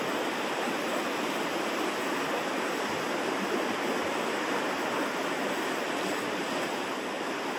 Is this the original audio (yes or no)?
yes